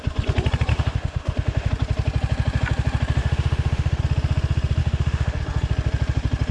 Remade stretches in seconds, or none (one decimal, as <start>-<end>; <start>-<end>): 0.7-1.7; 3.2-4.0; 4.8-5.4